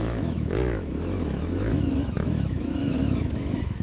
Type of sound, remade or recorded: remade